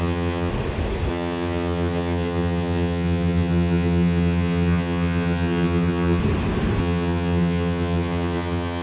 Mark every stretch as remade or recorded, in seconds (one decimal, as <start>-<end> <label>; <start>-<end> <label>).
0.0-0.5 remade; 0.5-1.1 recorded; 1.1-6.2 remade; 6.2-6.8 recorded; 6.8-8.8 remade